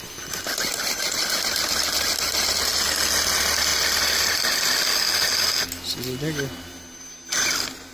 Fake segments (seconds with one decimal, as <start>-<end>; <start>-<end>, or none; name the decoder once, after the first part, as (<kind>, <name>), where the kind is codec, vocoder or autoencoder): none